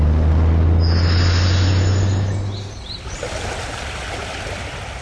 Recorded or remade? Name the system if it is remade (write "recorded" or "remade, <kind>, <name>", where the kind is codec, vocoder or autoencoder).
recorded